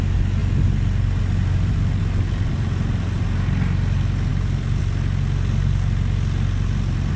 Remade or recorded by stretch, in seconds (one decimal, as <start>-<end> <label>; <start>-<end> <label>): 0.0-4.3 recorded; 4.3-4.8 remade; 4.8-7.2 recorded